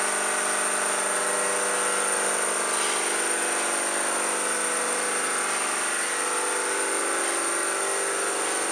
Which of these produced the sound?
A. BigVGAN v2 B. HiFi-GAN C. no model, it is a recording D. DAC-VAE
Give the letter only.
A